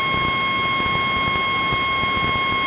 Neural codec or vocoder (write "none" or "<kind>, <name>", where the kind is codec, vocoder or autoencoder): none